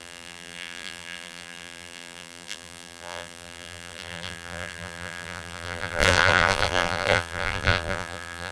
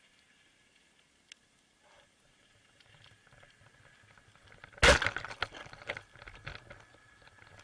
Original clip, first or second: second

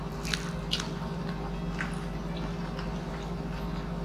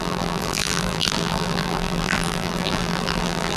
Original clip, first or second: first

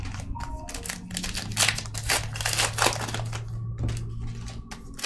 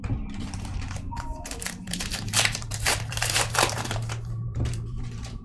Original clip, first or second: first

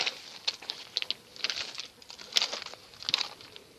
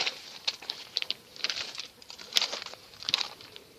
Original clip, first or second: first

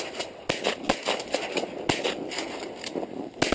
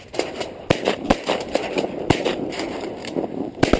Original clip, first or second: first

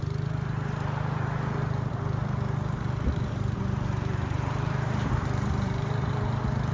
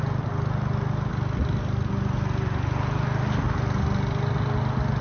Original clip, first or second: second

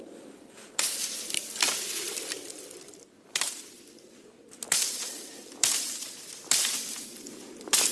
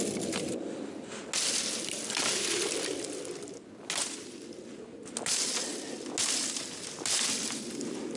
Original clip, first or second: second